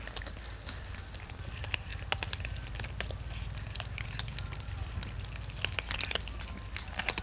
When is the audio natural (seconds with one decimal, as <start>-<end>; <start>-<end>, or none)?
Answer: 0.0-7.2